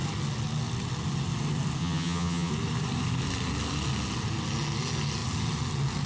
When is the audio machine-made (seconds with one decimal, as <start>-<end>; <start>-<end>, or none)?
1.8-2.5